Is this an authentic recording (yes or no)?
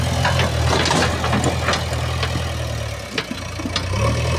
yes